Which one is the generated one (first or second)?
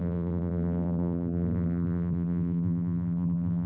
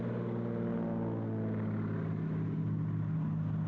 first